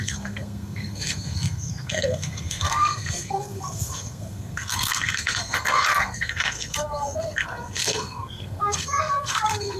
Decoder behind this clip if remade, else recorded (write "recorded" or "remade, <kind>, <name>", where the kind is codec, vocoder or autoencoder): remade, codec, SNAC